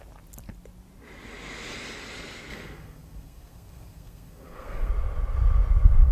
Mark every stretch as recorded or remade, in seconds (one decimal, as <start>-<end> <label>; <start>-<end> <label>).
0.0-2.5 recorded; 2.5-4.9 remade; 4.9-6.1 recorded